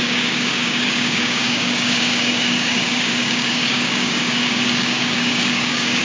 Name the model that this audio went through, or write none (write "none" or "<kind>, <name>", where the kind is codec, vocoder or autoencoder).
codec, DAC